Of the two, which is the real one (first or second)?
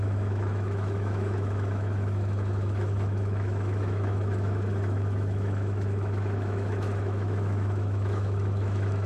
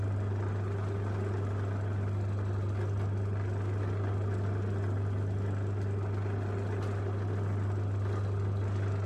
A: second